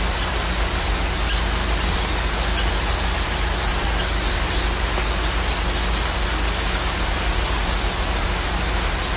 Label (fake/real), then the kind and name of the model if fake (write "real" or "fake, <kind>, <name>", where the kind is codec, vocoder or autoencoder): real